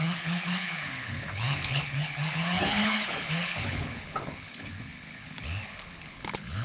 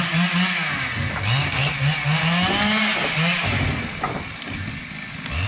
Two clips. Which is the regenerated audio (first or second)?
first